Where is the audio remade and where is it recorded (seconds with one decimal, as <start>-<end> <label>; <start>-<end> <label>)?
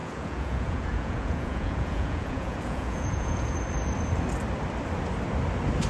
0.0-3.5 remade; 3.5-5.9 recorded